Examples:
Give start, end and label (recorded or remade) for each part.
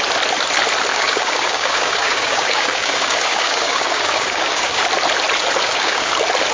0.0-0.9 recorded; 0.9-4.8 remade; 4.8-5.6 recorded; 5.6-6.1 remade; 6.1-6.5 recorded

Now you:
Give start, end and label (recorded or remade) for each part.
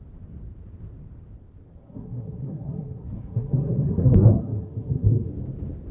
0.0-1.8 recorded; 1.8-5.3 remade; 5.3-5.9 recorded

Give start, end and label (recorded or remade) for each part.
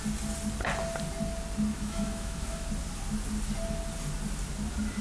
0.0-1.7 recorded; 1.7-2.7 remade; 2.7-5.0 recorded